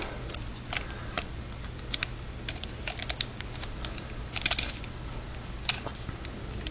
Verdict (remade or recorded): recorded